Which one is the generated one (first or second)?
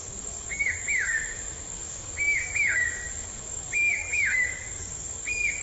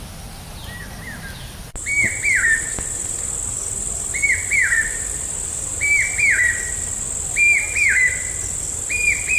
first